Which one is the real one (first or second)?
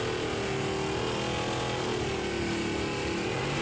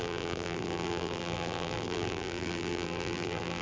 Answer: first